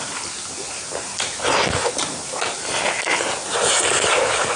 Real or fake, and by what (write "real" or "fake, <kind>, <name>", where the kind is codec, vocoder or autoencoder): real